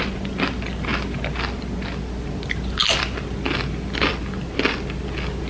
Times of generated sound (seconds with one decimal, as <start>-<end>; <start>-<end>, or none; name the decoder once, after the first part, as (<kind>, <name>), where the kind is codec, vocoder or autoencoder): none